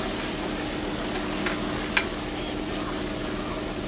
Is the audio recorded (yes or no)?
yes